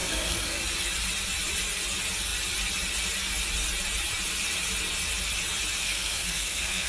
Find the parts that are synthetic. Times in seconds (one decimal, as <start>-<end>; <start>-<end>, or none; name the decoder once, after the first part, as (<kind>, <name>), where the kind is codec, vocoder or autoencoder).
0.0-0.6 (codec, SNAC); 5.8-6.9

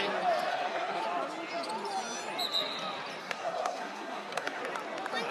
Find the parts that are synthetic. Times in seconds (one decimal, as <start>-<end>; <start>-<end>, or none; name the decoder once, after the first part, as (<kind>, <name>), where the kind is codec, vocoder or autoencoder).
0.5-1.0 (codec, SNAC); 3.2-4.6

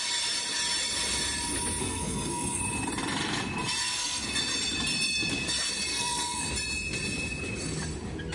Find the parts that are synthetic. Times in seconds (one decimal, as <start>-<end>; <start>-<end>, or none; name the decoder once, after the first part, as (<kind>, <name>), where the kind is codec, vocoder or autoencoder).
1.8-2.6 (codec, SNAC); 3.8-4.4; 5.9-6.5

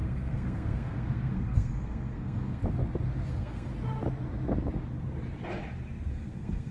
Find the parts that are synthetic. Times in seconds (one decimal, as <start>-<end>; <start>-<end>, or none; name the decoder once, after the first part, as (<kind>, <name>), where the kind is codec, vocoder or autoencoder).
0.0-2.6 (codec, SNAC); 3.3-3.7; 6.1-6.7

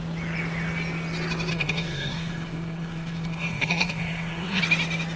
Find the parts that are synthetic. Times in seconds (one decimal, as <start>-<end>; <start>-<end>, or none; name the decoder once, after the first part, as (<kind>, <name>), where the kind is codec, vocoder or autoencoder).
1.5-4.6 (codec, SNAC)